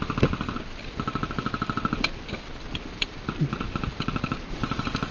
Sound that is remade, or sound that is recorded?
recorded